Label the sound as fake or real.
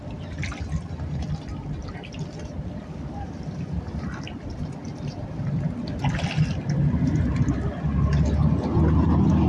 real